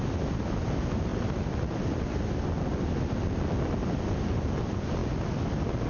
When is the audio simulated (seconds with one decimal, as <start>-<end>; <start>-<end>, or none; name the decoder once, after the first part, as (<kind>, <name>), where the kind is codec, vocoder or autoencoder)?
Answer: none

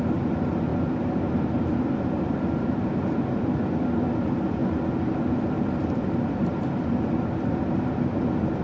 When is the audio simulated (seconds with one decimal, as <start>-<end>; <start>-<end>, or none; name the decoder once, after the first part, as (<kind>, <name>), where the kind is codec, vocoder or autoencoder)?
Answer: none

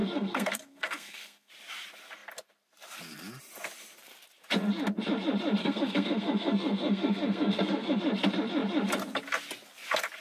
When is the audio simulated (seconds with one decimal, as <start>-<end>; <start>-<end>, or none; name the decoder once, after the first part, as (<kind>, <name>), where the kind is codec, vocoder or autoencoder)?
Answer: 0.0-1.5 (codec, SNAC); 5.6-8.0

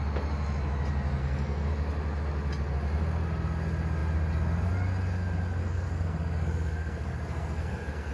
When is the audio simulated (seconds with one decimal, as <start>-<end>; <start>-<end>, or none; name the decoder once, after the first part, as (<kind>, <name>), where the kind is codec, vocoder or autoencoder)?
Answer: 1.2-1.7 (codec, SNAC); 5.6-8.1

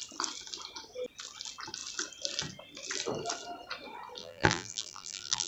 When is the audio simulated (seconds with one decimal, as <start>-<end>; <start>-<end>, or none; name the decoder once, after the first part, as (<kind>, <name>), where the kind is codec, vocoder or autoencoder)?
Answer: 4.2-5.5 (vocoder, BigVGAN v2)

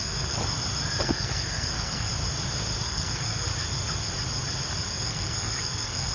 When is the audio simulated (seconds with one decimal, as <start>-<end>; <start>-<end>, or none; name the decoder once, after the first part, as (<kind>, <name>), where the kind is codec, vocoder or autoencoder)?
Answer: 0.0-0.4 (codec, SNAC); 1.0-2.1; 2.8-3.5; 4.9-6.1

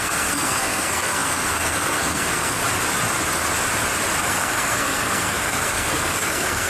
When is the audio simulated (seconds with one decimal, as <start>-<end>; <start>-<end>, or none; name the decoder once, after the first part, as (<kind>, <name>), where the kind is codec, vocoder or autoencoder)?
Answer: 0.0-2.6 (codec, SNAC); 4.2-6.7

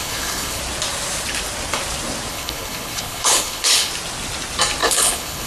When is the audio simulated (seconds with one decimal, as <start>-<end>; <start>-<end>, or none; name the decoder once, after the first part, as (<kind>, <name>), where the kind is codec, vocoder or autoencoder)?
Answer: 0.0-0.6 (codec, HILCodec); 2.3-3.9; 4.8-5.5